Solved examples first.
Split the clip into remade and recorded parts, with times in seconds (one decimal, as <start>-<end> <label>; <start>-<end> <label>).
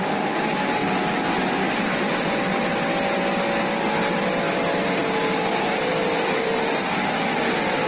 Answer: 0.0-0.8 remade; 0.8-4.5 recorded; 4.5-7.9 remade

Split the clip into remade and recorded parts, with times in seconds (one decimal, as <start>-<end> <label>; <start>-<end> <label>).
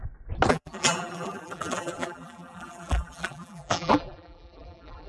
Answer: 0.0-0.5 recorded; 0.5-5.1 remade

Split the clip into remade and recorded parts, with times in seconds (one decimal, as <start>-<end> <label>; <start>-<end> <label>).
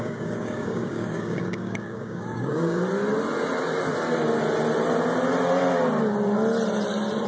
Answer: 0.0-2.8 remade; 2.8-7.3 recorded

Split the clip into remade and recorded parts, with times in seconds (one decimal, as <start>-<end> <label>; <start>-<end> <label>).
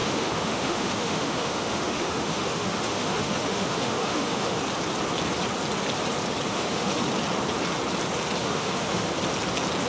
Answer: 0.0-4.6 remade; 4.6-6.5 recorded; 6.5-7.0 remade; 7.0-8.4 recorded; 8.4-9.1 remade; 9.1-9.9 recorded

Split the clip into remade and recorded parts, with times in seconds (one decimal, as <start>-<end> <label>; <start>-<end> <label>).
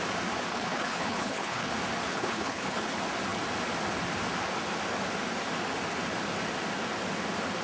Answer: 0.0-0.5 recorded; 0.5-1.7 remade; 1.7-2.1 recorded; 2.1-2.9 remade; 2.9-7.6 recorded